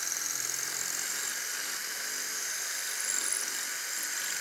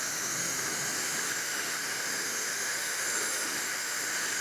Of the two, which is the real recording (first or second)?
first